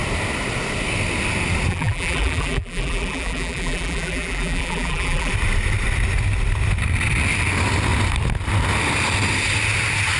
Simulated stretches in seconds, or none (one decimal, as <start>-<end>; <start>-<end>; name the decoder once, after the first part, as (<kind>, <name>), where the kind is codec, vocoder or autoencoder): 1.7-5.3 (vocoder, BigVGAN v2)